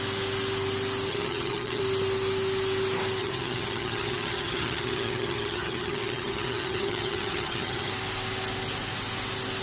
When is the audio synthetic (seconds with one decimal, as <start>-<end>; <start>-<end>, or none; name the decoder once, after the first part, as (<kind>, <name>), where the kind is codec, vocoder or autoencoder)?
1.1-1.8 (vocoder, HiFi-GAN); 3.2-7.9